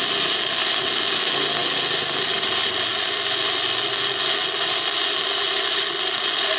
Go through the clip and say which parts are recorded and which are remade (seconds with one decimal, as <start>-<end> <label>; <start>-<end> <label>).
0.0-6.6 recorded

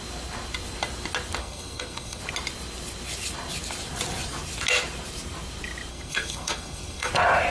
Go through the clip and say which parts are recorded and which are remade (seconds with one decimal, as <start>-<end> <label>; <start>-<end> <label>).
0.0-1.4 recorded; 1.4-2.2 remade; 2.2-5.9 recorded; 5.9-7.1 remade; 7.1-7.5 recorded

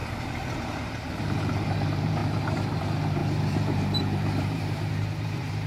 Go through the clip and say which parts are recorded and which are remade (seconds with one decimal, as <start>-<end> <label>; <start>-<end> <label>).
0.0-2.2 remade; 2.2-2.8 recorded; 2.8-5.7 remade

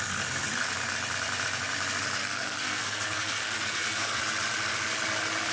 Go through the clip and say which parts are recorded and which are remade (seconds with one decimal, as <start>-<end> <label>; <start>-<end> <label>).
0.0-2.2 recorded; 2.2-4.2 remade; 4.2-5.5 recorded

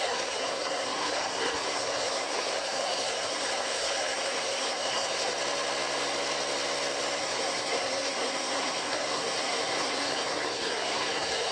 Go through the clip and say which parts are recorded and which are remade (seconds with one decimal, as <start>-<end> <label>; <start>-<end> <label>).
0.0-5.3 remade; 5.3-7.2 recorded; 7.2-11.5 remade